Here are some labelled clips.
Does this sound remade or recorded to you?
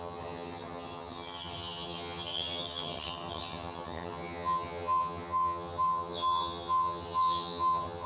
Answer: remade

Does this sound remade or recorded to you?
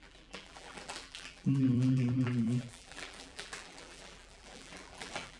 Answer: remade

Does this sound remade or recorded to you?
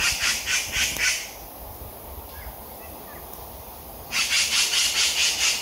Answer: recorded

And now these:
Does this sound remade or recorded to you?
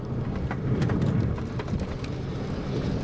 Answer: remade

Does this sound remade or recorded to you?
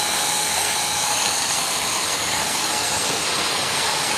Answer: remade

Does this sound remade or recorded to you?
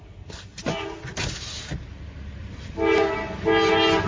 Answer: recorded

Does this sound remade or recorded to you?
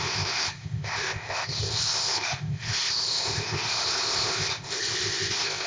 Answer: remade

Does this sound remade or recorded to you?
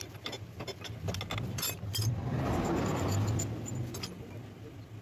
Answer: recorded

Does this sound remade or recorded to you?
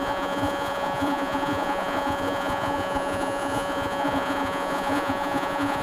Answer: remade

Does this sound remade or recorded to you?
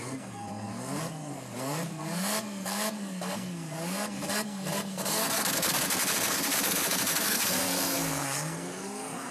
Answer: remade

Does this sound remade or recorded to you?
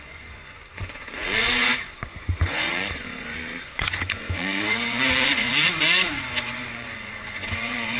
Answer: remade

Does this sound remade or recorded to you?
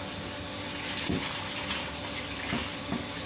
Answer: recorded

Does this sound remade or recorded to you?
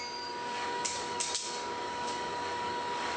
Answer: remade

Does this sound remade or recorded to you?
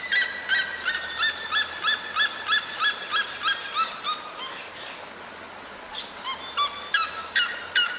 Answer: recorded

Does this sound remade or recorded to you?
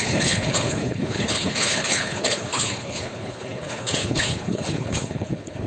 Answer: remade